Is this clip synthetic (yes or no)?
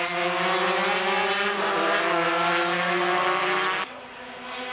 no